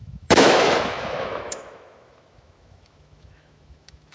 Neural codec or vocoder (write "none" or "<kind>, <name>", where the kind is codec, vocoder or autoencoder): autoencoder, DAC-VAE